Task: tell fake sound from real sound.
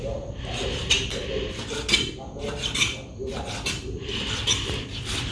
real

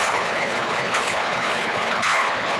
fake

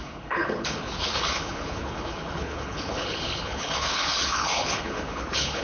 fake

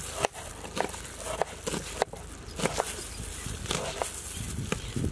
real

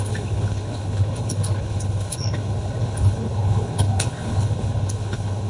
fake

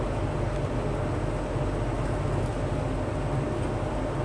real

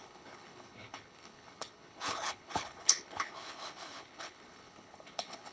fake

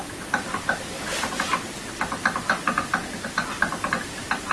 real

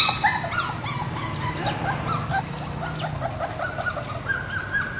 real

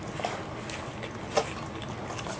real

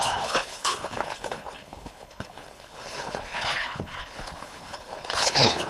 fake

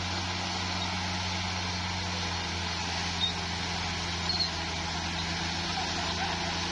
real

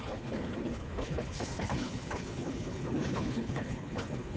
fake